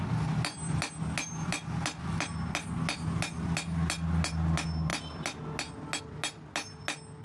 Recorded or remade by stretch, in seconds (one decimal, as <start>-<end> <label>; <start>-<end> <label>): 0.0-7.2 recorded